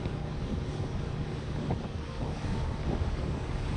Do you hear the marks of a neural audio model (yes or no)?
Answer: yes